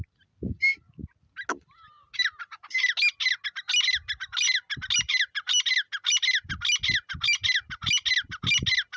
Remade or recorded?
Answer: recorded